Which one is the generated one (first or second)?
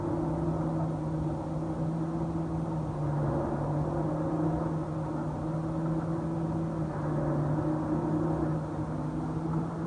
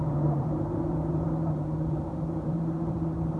second